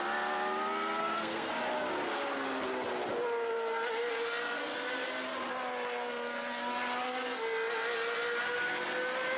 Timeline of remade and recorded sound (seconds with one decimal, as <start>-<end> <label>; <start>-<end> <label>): 0.0-1.0 recorded; 1.0-1.5 remade; 1.5-9.4 recorded